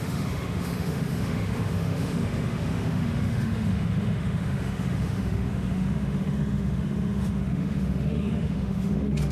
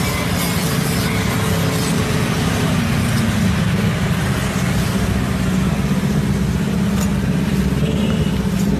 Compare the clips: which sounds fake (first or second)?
first